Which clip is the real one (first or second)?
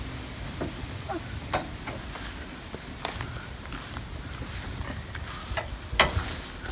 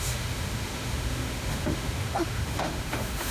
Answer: first